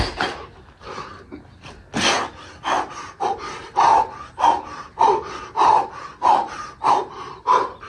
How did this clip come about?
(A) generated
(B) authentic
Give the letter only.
B